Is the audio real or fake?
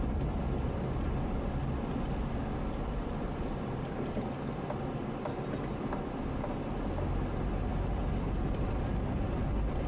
real